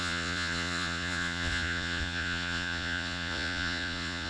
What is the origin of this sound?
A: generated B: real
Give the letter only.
A